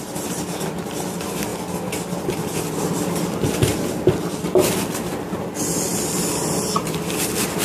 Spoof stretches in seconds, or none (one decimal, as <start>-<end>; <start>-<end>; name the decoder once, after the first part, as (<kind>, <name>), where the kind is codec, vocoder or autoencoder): 5.9-6.5 (vocoder, BigVGAN v2)